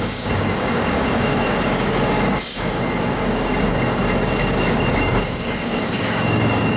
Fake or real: fake